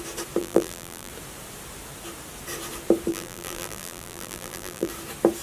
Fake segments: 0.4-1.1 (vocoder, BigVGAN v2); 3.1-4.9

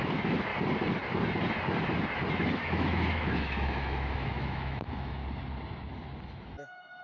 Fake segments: 0.0-0.5 (autoencoder, DAC-VAE); 2.3-5.2; 6.2-7.0

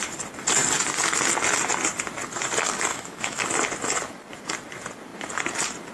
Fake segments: 2.9-3.4 (autoencoder, DAC-VAE)